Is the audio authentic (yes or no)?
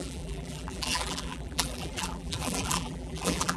no